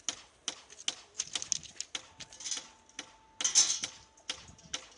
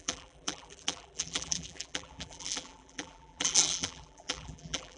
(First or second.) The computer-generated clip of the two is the second